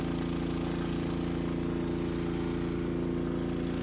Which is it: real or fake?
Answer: real